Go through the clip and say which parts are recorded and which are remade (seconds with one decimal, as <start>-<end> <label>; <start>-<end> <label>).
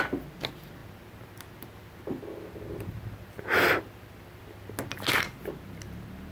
0.0-6.3 recorded